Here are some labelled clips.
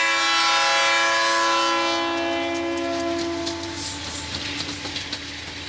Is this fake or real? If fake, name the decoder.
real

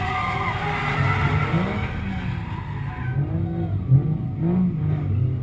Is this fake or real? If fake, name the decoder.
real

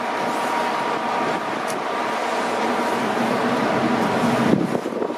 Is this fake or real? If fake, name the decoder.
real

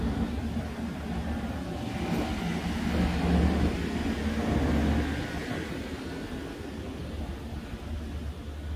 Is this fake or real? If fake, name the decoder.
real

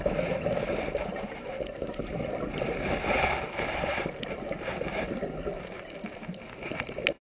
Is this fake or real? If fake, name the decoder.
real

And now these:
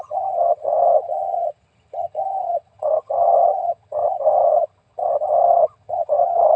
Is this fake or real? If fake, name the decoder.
fake, vocoder, HiFi-GAN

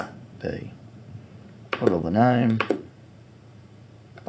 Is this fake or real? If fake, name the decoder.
fake, vocoder, Vocos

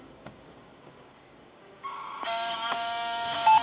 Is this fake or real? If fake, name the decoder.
fake, codec, DAC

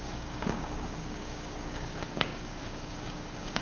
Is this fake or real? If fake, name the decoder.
fake, codec, DAC